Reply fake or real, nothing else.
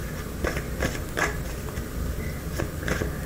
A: real